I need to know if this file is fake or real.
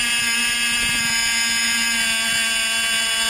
real